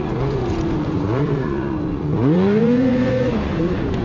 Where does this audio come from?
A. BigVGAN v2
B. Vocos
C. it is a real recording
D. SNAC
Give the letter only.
B